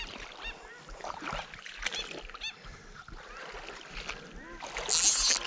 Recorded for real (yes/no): yes